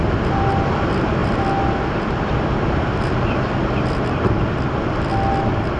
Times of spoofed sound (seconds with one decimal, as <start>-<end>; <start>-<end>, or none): none